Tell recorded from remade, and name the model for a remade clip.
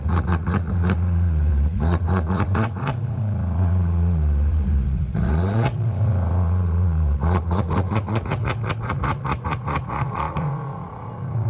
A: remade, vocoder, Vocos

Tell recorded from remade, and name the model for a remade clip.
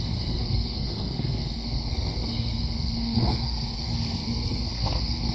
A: remade, codec, SNAC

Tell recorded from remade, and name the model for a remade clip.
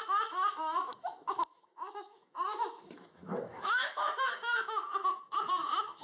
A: remade, autoencoder, DAC-VAE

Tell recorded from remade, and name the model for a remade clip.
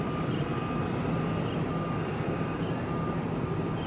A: recorded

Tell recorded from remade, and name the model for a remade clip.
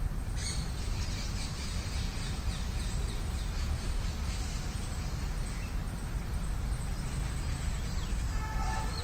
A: recorded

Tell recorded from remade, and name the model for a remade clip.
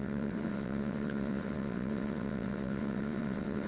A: remade, vocoder, WaveNeXt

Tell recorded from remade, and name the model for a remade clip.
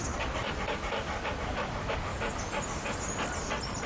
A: recorded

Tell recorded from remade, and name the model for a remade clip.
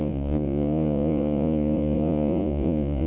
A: remade, vocoder, Vocos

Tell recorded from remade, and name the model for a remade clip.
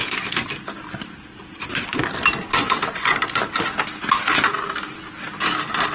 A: recorded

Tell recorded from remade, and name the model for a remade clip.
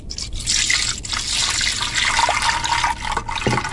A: recorded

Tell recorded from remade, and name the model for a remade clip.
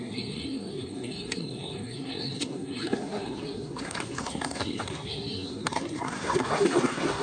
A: remade, codec, SNAC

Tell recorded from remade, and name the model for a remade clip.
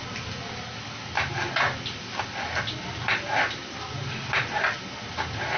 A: recorded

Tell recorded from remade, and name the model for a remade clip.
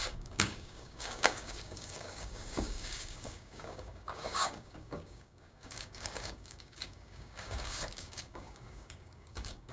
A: remade, codec, DAC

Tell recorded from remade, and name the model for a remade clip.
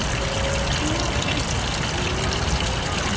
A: recorded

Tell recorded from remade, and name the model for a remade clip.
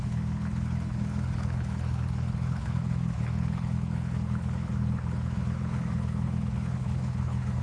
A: remade, codec, HILCodec